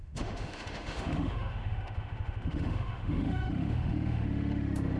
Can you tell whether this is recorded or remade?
remade